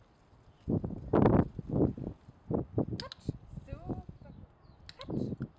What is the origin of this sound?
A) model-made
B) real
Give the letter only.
B